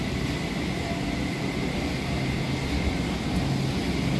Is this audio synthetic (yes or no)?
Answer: no